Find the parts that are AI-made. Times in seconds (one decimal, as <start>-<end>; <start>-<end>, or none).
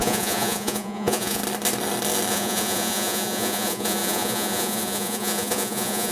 0.0-1.4; 2.3-6.1